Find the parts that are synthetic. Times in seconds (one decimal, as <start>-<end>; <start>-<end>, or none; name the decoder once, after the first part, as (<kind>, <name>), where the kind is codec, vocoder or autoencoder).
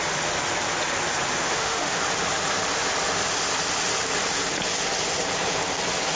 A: 1.4-2.0 (autoencoder, DAC-VAE)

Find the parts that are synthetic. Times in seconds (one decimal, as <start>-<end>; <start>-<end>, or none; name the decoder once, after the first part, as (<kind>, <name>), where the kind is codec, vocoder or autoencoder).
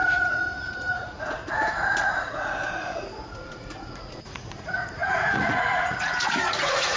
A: 0.0-7.0 (vocoder, Vocos)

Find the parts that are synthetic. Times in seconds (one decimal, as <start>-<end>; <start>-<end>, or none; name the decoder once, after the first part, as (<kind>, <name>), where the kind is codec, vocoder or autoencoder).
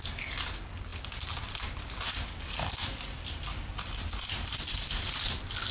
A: none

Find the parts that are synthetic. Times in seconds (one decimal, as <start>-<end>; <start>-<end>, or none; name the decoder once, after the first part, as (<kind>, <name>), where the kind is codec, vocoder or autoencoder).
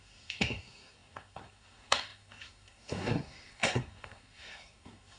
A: 0.0-5.2 (codec, SNAC)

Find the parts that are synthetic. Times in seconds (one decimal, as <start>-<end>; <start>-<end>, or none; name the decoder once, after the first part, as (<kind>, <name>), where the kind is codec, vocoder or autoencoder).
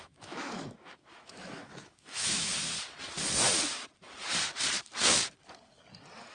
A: 0.0-2.5 (autoencoder, DAC-VAE)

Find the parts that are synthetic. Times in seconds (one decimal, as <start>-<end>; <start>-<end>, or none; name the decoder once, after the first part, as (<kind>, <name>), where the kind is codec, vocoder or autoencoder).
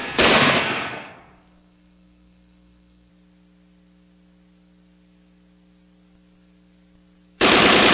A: 0.0-3.1 (codec, SNAC)